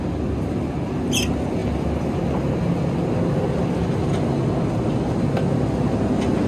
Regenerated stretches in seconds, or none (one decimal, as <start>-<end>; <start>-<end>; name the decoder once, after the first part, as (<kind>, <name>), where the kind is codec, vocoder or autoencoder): none